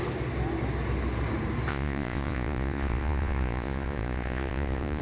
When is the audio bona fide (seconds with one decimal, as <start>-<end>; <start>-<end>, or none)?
0.0-1.7